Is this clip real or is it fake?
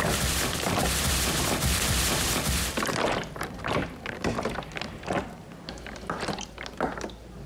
fake